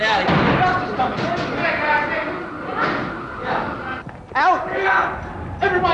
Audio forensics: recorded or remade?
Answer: recorded